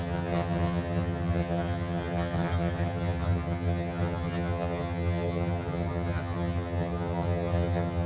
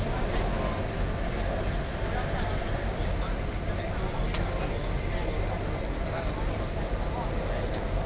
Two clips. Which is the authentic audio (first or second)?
second